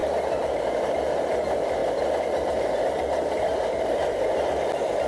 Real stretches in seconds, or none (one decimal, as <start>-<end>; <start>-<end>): 0.0-5.1